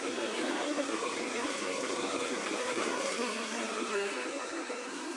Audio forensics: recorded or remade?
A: remade